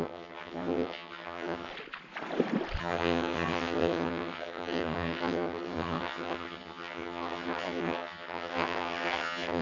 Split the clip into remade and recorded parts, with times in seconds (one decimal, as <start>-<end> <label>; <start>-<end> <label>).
0.0-1.7 remade; 1.7-2.8 recorded; 2.8-9.6 remade